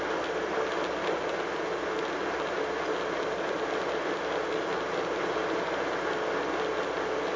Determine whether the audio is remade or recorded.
recorded